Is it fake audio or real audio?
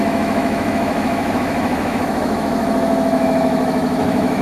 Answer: fake